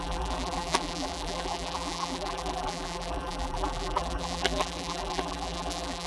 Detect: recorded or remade remade